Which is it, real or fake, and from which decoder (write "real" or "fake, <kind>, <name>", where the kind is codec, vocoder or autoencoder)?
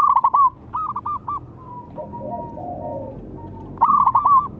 real